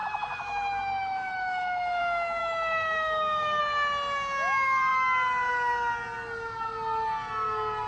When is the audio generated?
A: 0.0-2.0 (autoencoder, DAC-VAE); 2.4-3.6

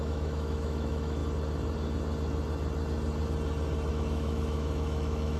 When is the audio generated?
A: 0.0-1.2 (autoencoder, DAC-VAE); 3.9-5.4

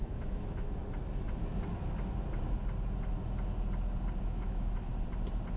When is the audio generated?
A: 0.0-0.8 (autoencoder, DAC-VAE); 4.2-4.9

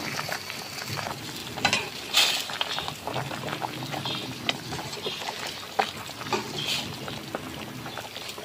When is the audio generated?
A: none

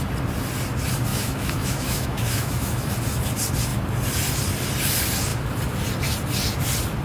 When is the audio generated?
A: 1.1-2.9 (autoencoder, DAC-VAE)

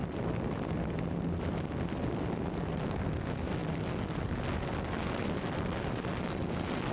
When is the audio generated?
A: none

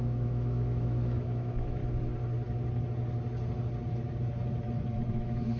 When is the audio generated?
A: 0.0-1.8 (autoencoder, DAC-VAE); 5.1-5.6

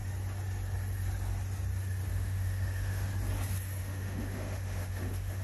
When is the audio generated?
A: 2.1-3.1 (autoencoder, DAC-VAE); 3.8-5.4